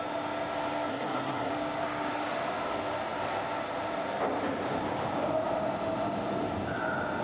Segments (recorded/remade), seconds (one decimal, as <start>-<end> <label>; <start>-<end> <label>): 0.0-0.9 recorded; 0.9-1.5 remade; 1.5-7.2 recorded